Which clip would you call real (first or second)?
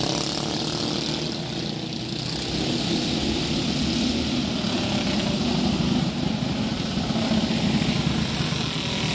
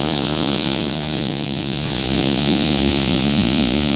first